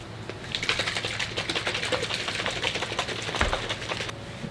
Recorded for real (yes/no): yes